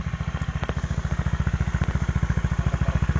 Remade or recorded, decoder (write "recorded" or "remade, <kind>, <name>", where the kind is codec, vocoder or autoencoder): recorded